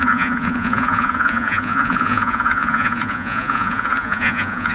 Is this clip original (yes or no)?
no